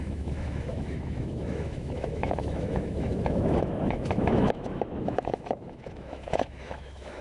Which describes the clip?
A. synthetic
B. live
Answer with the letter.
A